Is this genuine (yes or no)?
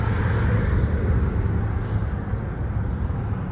yes